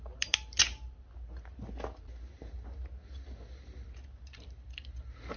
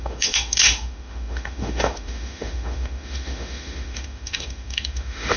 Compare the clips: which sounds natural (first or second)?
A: first